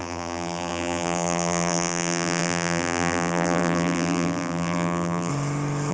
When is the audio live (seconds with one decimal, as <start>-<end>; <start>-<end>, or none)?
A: 5.3-5.9